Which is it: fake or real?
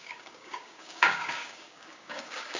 fake